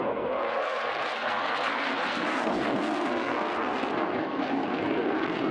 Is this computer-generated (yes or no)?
yes